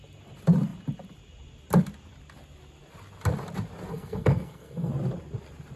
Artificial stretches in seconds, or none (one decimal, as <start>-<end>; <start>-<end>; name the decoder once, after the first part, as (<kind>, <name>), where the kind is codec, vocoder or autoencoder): 3.9-4.9 (codec, SNAC)